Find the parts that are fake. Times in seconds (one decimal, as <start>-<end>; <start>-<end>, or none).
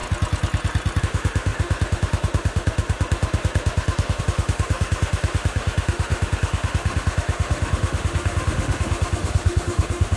1.0-10.2